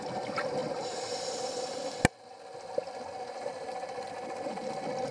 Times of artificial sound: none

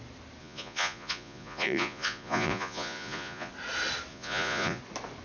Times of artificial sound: 0.4-3.5; 4.1-4.8

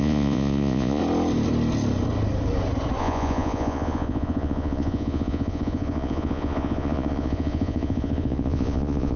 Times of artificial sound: 0.0-1.0; 3.0-9.2

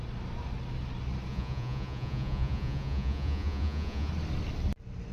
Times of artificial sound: 1.3-4.1

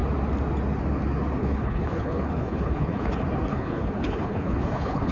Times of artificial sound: 1.4-3.1; 3.5-5.1

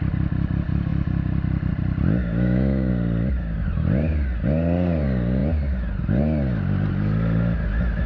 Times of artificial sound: 2.2-2.9

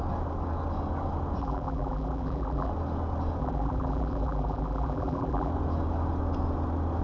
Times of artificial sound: 1.4-2.7; 3.4-5.5

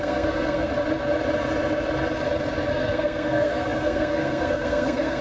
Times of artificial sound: 0.0-0.7; 2.7-5.2